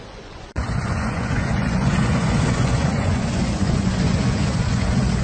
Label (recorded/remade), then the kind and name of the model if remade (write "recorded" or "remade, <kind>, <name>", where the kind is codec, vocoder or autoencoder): remade, vocoder, Vocos